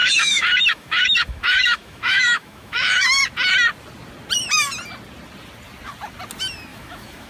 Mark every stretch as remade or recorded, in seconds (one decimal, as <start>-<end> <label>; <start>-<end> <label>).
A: 0.0-3.2 remade; 3.2-6.7 recorded; 6.7-7.3 remade